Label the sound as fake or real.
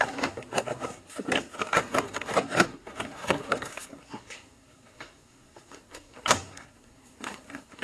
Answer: fake